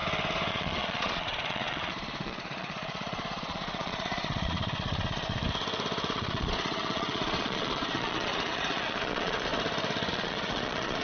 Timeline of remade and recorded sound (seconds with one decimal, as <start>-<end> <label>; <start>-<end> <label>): 0.0-0.5 recorded; 0.5-5.4 remade; 5.4-6.1 recorded; 6.1-9.5 remade; 9.5-10.1 recorded; 10.1-11.0 remade